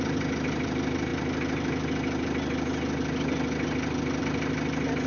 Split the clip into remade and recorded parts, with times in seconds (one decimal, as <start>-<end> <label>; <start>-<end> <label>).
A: 0.0-5.1 recorded